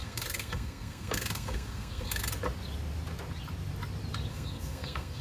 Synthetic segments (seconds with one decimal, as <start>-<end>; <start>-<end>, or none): 0.0-2.2; 4.3-5.2